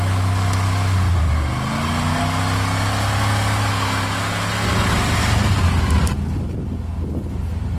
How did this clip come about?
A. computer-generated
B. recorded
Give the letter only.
B